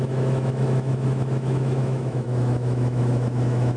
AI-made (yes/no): yes